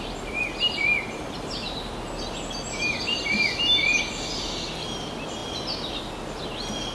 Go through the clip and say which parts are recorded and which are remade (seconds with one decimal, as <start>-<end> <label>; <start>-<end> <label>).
0.0-6.9 recorded